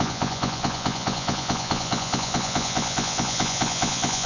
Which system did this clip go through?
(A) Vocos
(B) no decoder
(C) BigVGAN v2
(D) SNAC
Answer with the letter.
A